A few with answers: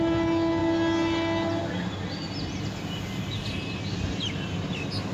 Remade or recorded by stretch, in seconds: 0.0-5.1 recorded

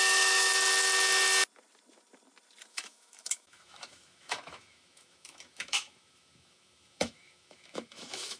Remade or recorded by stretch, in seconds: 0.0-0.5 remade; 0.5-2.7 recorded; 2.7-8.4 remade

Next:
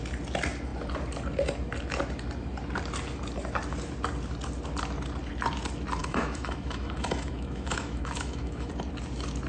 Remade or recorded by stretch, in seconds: 0.0-6.0 recorded; 6.0-8.7 remade; 8.7-9.5 recorded

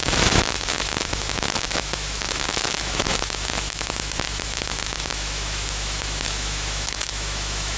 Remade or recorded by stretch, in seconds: 0.0-7.8 remade

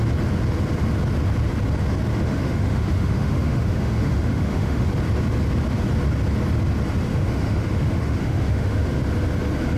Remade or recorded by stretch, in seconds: 0.0-2.1 recorded; 2.1-4.9 remade; 4.9-7.1 recorded; 7.1-9.0 remade; 9.0-9.8 recorded

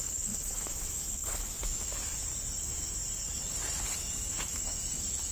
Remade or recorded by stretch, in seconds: 0.0-2.1 remade; 2.1-2.6 recorded; 2.6-3.0 remade; 3.0-3.9 recorded; 3.9-5.3 remade